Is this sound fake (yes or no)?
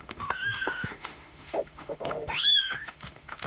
yes